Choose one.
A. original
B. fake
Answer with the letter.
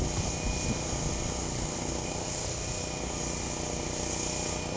A